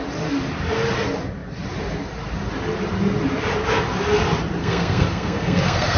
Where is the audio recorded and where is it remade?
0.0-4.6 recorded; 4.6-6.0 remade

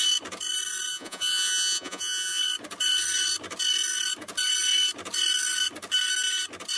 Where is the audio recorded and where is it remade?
0.0-0.9 recorded; 0.9-2.4 remade; 2.4-6.8 recorded

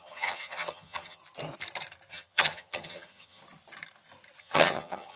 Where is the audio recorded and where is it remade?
0.0-1.2 remade; 1.2-2.1 recorded; 2.1-3.4 remade; 3.4-4.4 recorded; 4.4-5.2 remade

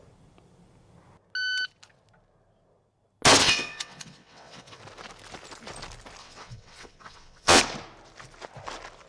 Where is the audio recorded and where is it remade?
0.0-3.4 recorded; 3.4-4.8 remade; 4.8-6.2 recorded; 6.2-7.6 remade; 7.6-9.1 recorded

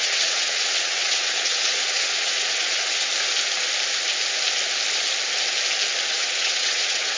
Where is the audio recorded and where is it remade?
0.0-3.1 remade; 3.1-6.1 recorded; 6.1-7.2 remade

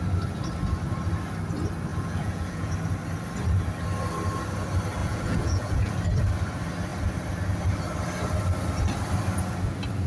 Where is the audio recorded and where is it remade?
0.0-1.9 recorded; 1.9-2.7 remade; 2.7-5.0 recorded; 5.0-5.9 remade; 5.9-10.1 recorded

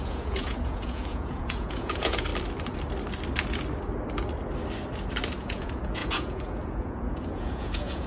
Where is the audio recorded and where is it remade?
0.0-2.3 remade; 2.3-5.4 recorded; 5.4-8.1 remade

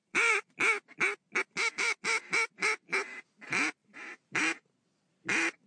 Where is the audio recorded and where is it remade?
0.0-0.5 remade; 0.5-3.8 recorded; 3.8-4.4 remade; 4.4-5.7 recorded